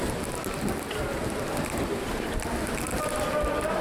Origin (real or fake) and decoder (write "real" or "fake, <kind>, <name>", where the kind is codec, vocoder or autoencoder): real